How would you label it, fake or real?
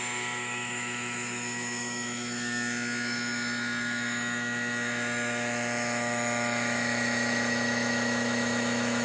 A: fake